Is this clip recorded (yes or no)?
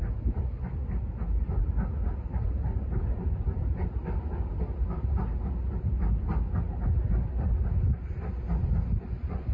yes